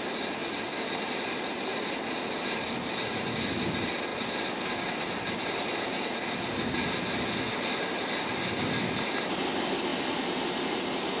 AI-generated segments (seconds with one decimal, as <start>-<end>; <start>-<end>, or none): none